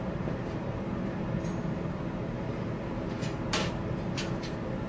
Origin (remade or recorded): remade